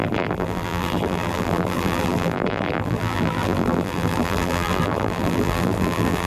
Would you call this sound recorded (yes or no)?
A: no